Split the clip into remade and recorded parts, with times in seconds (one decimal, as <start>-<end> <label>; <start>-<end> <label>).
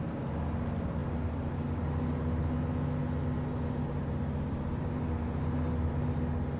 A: 0.0-6.6 recorded